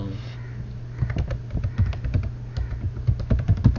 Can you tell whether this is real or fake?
real